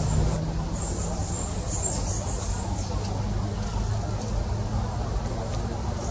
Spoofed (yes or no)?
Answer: no